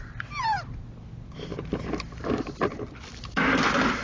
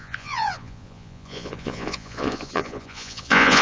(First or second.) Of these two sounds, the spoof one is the second